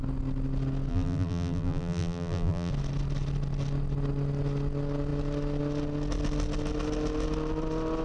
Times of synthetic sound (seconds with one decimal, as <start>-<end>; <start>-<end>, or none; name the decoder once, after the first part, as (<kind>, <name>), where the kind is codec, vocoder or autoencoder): 0.9-2.7 (vocoder, BigVGAN v2)